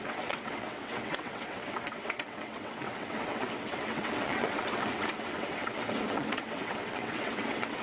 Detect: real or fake fake